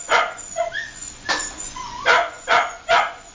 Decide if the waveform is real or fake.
fake